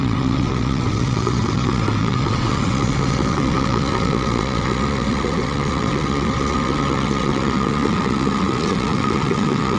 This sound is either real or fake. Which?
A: fake